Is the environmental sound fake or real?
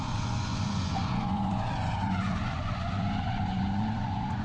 fake